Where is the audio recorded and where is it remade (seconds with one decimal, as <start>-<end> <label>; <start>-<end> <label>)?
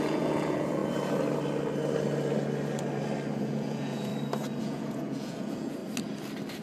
0.0-0.8 remade; 0.8-3.4 recorded; 3.4-4.1 remade; 4.1-4.6 recorded; 4.6-5.8 remade; 5.8-6.6 recorded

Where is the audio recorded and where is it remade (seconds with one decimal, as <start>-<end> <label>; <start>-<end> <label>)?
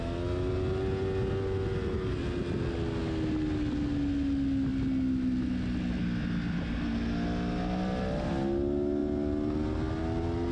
0.0-10.5 recorded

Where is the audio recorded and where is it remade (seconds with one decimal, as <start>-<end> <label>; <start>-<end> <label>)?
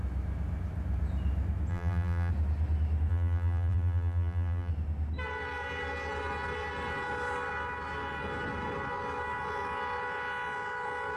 0.0-1.7 recorded; 1.7-2.3 remade; 2.3-3.1 recorded; 3.1-4.7 remade; 4.7-11.2 recorded